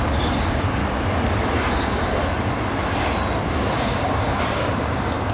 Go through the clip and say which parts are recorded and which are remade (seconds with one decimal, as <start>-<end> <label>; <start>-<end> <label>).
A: 0.0-0.8 remade; 0.8-1.7 recorded; 1.7-2.2 remade; 2.2-3.5 recorded; 3.5-5.3 remade